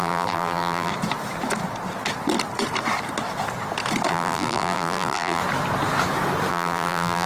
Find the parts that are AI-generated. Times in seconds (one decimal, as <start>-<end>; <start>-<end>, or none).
0.0-0.9; 4.1-5.4; 6.5-7.3